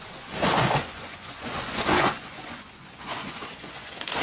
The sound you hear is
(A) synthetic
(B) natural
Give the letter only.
A